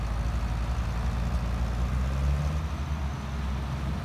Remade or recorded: recorded